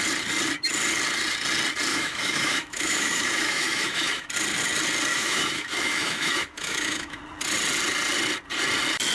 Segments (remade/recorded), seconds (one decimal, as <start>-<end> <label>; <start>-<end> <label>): 0.0-1.9 recorded; 1.9-4.3 remade; 4.3-5.1 recorded; 5.1-7.2 remade; 7.2-9.1 recorded